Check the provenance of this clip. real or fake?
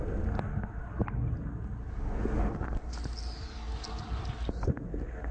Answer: real